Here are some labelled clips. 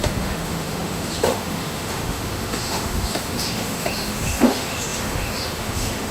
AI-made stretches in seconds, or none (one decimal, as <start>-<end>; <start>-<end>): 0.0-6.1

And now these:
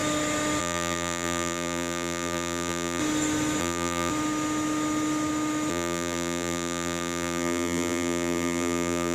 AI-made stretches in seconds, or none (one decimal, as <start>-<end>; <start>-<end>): 0.6-3.0; 3.6-4.1; 5.7-9.1

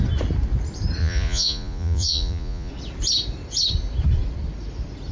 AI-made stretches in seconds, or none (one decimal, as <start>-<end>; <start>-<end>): 1.0-2.7

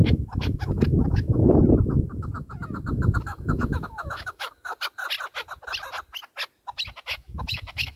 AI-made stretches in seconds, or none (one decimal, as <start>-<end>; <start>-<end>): 0.0-4.7; 7.1-8.0